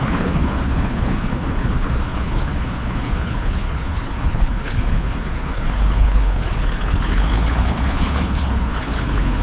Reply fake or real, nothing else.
fake